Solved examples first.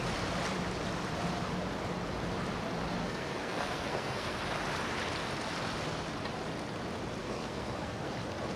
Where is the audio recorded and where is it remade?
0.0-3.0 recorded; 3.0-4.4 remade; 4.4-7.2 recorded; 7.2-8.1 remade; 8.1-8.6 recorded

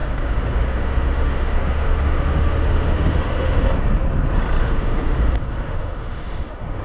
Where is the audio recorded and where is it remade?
0.0-3.6 remade; 3.6-4.6 recorded; 4.6-6.8 remade

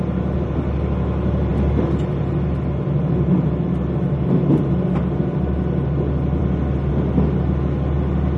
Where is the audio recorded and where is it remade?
0.0-8.4 recorded

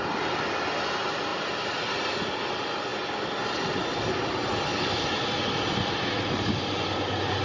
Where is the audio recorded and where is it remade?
0.0-7.4 recorded

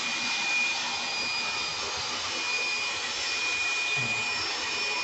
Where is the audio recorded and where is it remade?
0.0-5.0 recorded

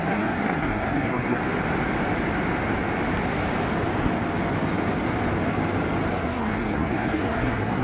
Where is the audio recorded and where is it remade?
0.0-1.4 remade; 1.4-6.1 recorded; 6.1-7.8 remade

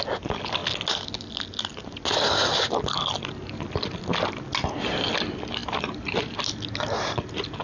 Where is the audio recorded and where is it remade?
0.0-7.6 recorded

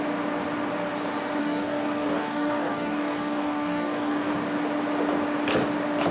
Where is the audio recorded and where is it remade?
0.0-1.4 recorded; 1.4-4.3 remade; 4.3-6.1 recorded